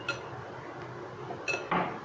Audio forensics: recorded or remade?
recorded